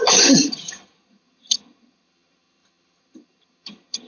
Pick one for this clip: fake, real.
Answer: fake